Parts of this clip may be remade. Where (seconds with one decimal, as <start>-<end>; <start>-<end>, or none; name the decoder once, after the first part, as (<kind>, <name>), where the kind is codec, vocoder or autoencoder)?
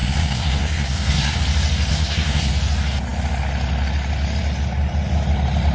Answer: 0.0-1.4 (codec, SNAC); 1.9-2.5